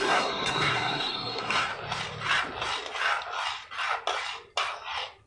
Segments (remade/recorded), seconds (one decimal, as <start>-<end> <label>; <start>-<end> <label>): 0.0-1.7 remade; 1.7-5.3 recorded